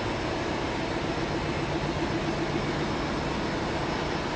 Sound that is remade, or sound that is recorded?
recorded